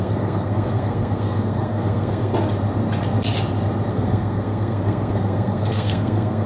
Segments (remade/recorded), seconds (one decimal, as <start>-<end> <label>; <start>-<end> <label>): 0.0-2.3 remade; 2.3-3.9 recorded; 3.9-6.5 remade